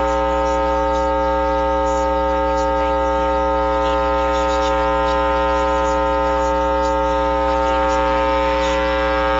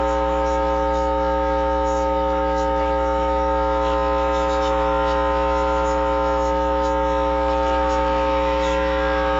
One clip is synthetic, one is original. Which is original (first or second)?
first